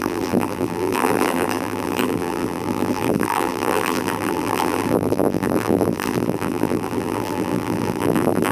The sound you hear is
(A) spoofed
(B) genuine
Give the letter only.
A